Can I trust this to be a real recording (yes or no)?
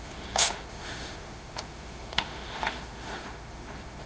no